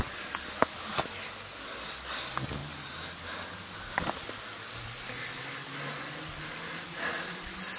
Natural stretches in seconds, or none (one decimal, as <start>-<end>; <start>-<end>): 0.0-7.8